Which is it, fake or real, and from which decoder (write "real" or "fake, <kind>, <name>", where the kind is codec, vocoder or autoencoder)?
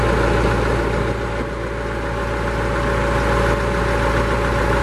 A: real